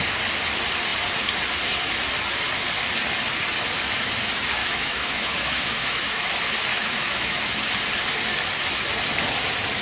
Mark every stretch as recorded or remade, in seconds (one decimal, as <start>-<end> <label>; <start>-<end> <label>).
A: 0.0-4.6 recorded; 4.6-6.3 remade; 6.3-6.7 recorded; 6.7-7.5 remade; 7.5-9.8 recorded